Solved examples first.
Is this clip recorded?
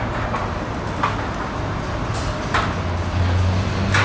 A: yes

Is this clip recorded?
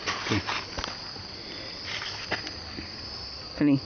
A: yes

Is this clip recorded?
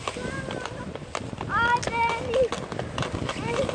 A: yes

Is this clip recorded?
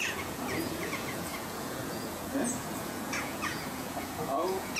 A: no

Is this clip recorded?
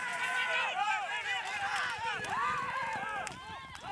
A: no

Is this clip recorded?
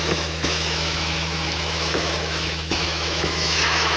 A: no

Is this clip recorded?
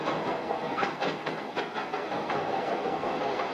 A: no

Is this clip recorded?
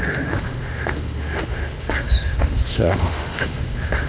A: no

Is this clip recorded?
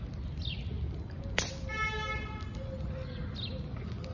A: yes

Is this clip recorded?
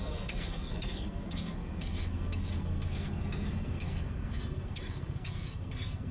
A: no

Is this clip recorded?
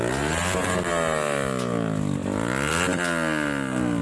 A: yes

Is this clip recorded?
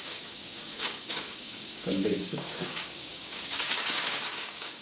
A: no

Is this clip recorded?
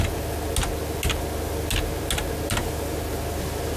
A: yes